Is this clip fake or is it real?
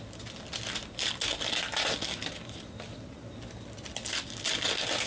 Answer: real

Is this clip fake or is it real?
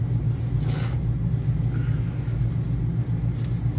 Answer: real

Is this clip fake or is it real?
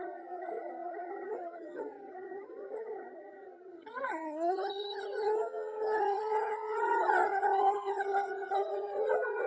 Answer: fake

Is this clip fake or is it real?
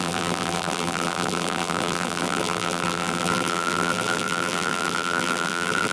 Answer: fake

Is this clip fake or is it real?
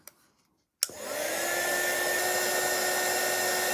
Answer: real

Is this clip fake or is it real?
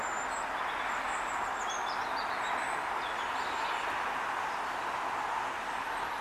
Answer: real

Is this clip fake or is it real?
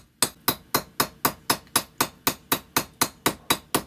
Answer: real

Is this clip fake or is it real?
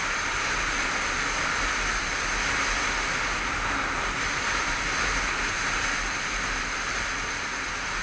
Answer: real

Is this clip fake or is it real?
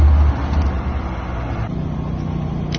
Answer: real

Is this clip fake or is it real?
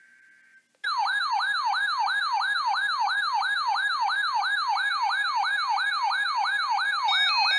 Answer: real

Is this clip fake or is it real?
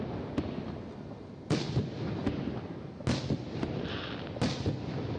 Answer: real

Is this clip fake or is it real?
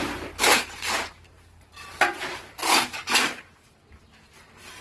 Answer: fake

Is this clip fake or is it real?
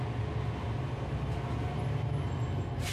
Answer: real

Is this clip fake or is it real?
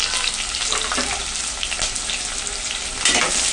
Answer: real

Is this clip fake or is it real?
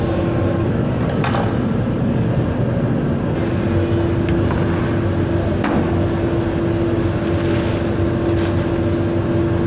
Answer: real